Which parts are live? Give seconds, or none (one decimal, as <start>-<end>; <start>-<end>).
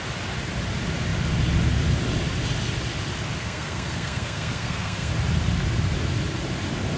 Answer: 0.0-3.4; 5.1-7.0